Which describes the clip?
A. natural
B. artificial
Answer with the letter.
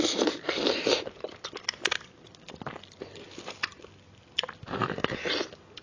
A